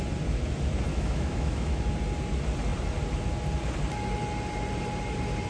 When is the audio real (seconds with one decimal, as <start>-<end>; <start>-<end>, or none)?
0.0-0.9; 1.9-5.5